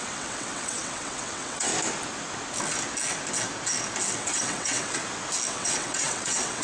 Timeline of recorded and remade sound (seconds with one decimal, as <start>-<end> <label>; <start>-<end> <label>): 0.0-1.7 remade; 1.7-4.2 recorded; 4.2-5.0 remade; 5.0-5.5 recorded; 5.5-6.6 remade